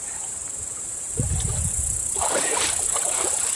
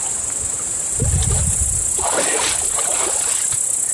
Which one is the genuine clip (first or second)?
second